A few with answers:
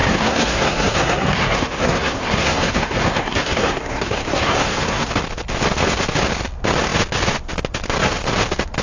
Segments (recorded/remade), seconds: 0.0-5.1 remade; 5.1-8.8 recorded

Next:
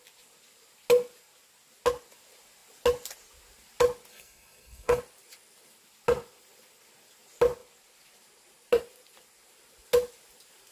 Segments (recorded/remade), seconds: 0.0-4.1 recorded; 4.1-5.0 remade; 5.0-10.7 recorded